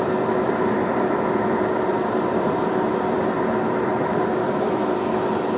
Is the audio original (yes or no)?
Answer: yes